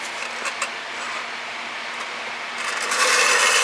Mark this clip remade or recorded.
remade